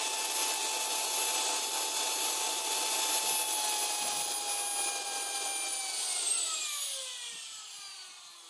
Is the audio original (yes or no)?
yes